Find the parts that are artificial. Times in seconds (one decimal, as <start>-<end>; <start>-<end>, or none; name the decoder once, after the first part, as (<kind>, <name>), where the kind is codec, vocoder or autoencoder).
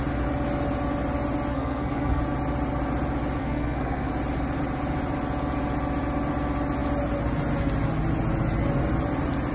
1.5-2.2 (codec, SNAC); 3.4-4.1